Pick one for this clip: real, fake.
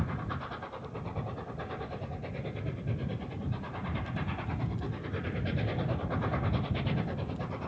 real